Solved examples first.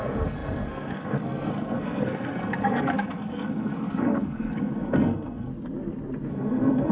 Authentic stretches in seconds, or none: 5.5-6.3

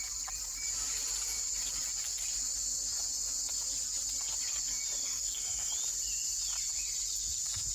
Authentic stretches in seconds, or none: 0.0-5.0; 5.7-7.7

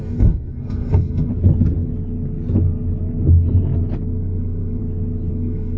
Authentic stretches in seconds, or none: 1.3-4.1; 4.8-5.3

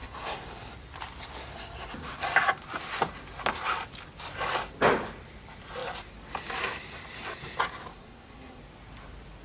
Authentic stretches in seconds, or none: 0.5-7.9; 8.6-9.4

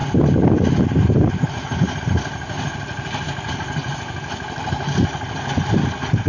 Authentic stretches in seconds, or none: 0.0-6.3

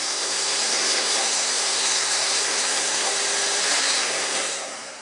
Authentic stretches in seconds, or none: 3.1-3.8

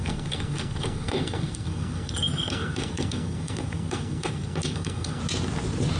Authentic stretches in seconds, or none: 5.2-6.0